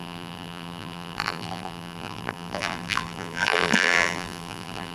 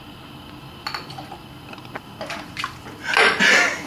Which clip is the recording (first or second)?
second